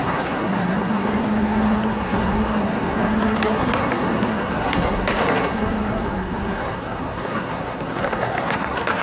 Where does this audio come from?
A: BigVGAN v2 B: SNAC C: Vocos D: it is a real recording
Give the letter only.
B